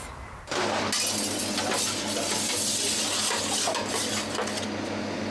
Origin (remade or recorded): recorded